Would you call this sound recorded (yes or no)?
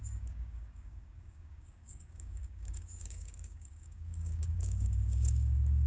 no